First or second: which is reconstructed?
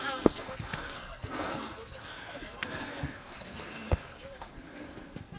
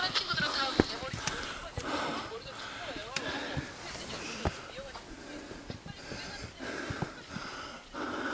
first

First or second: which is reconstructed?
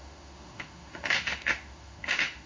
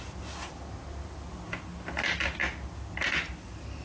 first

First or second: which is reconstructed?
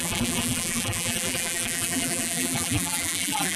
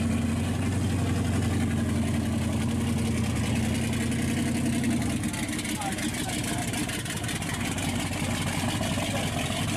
first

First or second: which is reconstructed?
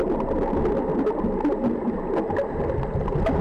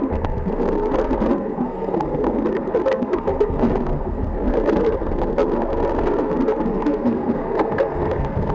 second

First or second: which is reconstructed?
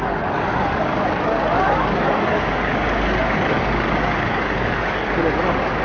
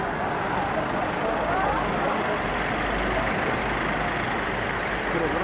first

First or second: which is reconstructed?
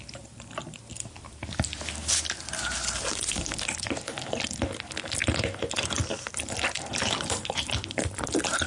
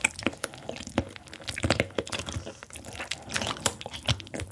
first